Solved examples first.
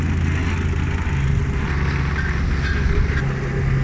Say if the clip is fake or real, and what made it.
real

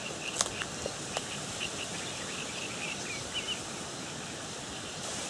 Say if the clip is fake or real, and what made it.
real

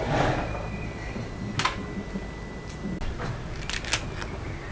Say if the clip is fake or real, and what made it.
real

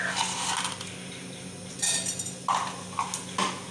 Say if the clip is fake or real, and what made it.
real